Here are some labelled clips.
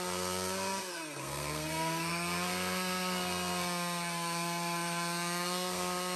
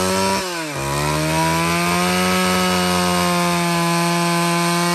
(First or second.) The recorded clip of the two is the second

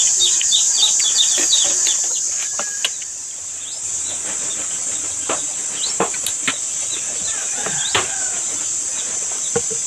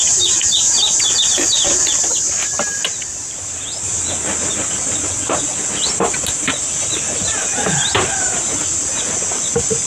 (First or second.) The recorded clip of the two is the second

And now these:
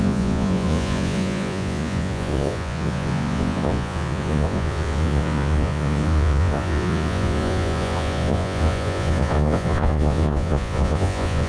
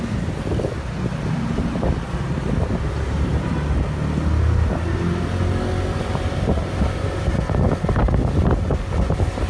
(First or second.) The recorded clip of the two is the second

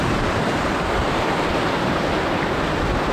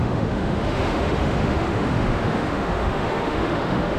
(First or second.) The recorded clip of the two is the first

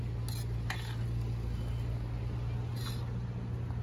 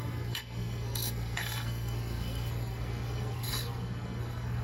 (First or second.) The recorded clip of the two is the first